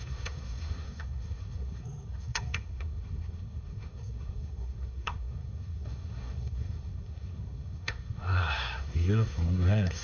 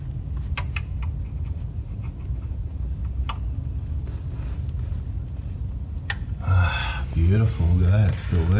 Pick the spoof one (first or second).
first